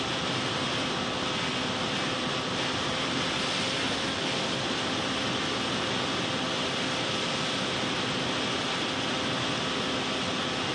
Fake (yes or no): no